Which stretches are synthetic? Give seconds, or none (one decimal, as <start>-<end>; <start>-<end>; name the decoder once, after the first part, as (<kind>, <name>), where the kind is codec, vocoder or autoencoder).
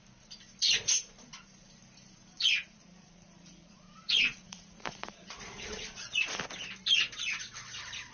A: 2.3-6.4 (vocoder, Vocos)